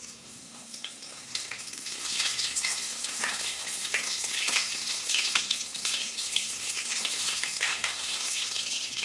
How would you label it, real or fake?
fake